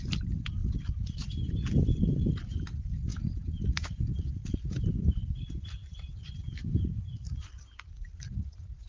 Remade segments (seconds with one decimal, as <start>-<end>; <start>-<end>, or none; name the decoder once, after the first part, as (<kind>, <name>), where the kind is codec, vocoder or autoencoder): 0.6-1.5 (vocoder, BigVGAN v2); 3.1-8.2